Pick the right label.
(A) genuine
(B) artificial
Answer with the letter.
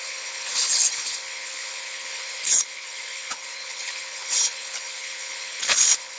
B